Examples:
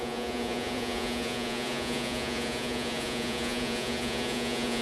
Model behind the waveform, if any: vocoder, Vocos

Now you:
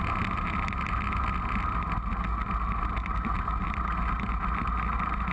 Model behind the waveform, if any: none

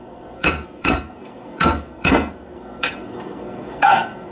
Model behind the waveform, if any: codec, SNAC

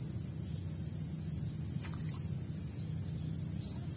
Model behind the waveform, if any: none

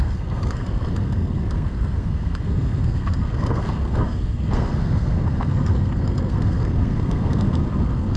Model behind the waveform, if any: codec, SNAC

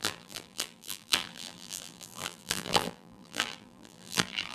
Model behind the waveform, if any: vocoder, BigVGAN v2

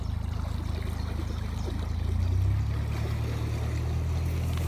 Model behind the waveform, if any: none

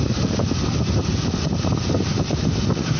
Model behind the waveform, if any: vocoder, BigVGAN v2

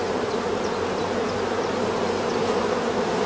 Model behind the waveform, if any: vocoder, BigVGAN v2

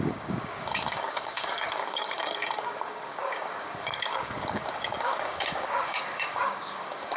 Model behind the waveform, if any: codec, DAC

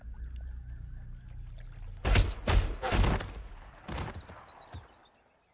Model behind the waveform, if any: none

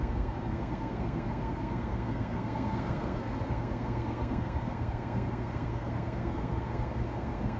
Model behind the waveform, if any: codec, SNAC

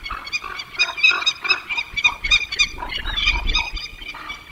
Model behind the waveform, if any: none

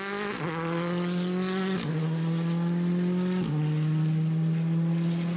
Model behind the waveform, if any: none